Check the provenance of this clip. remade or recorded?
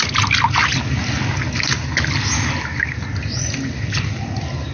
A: recorded